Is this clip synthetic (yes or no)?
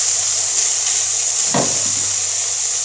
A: no